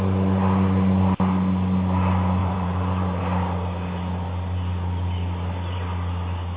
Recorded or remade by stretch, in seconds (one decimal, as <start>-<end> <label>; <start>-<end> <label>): 0.0-2.4 recorded; 2.4-3.2 remade; 3.2-6.6 recorded